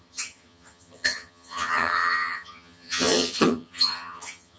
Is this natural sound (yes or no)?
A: no